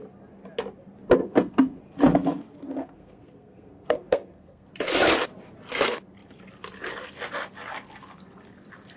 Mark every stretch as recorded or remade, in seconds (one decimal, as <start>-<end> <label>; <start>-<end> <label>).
0.0-1.2 recorded; 1.2-1.8 remade; 1.8-2.8 recorded; 2.8-4.7 remade; 4.7-9.0 recorded